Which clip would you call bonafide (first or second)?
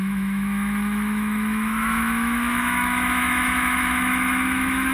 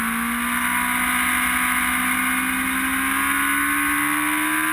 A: second